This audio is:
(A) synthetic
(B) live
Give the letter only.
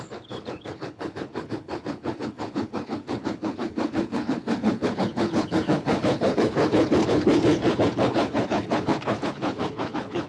A